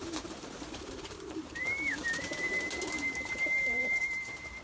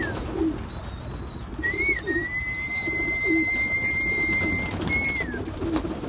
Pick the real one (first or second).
second